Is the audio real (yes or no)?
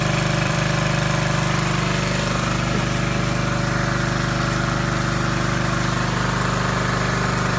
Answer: no